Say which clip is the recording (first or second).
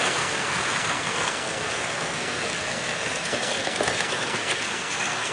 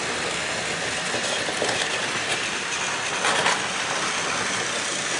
second